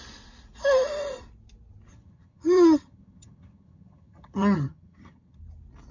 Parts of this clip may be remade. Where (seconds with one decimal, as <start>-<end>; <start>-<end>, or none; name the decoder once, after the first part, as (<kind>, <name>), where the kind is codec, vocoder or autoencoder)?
1.9-5.4 (vocoder, HiFi-GAN)